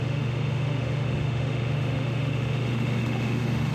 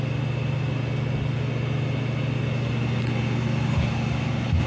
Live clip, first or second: second